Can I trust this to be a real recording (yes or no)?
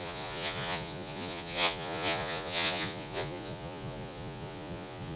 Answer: no